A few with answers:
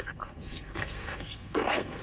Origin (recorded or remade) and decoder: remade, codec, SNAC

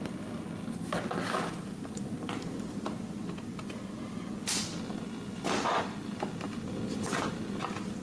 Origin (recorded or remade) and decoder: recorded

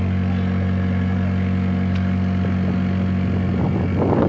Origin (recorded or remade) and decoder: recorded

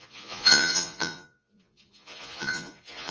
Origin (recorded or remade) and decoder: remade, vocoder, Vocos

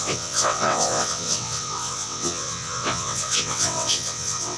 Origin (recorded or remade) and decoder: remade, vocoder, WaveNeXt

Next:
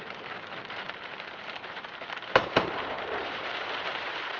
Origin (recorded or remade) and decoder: remade, vocoder, BigVGAN v2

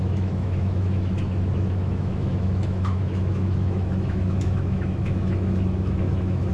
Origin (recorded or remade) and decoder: remade, autoencoder, DAC-VAE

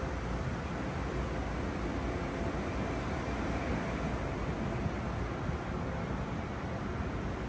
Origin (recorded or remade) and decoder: recorded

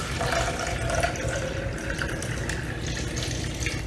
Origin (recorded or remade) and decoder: recorded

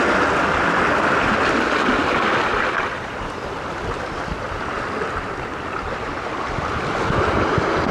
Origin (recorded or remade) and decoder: recorded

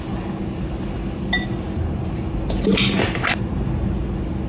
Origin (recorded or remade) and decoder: recorded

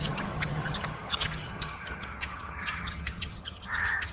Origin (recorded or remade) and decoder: remade, vocoder, HiFi-GAN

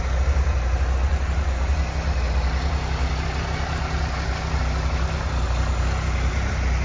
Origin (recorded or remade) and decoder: recorded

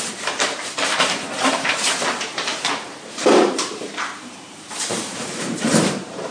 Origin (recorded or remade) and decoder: remade, vocoder, BigVGAN v2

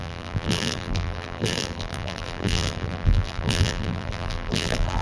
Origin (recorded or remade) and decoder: remade, vocoder, BigVGAN v2